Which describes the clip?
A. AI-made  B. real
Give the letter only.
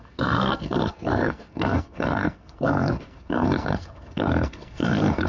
A